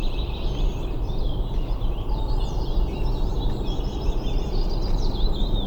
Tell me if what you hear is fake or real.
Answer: fake